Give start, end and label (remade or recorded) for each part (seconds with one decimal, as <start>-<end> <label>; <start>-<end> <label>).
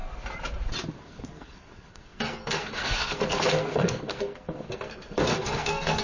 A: 0.0-1.0 recorded; 1.0-6.0 remade